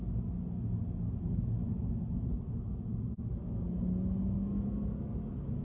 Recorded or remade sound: recorded